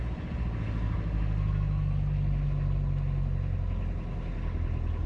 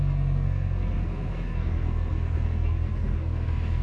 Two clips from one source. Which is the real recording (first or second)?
first